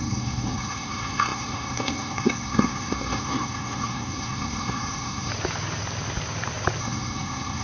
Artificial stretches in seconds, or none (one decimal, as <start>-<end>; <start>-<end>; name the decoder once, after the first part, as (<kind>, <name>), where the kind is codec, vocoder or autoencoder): 0.0-5.3 (codec, SNAC); 6.8-7.6